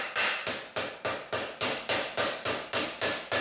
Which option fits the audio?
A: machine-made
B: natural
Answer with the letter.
B